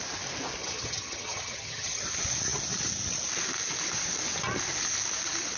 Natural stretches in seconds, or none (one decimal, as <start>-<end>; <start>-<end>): 0.0-0.6; 2.0-5.6